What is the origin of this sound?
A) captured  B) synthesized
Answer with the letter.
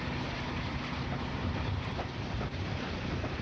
A